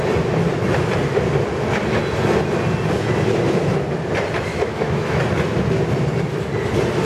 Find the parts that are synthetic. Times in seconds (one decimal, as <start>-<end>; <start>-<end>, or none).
4.5-5.2